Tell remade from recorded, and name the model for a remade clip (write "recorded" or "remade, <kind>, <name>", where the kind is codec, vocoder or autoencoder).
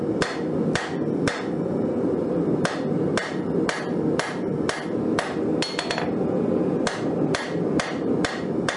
recorded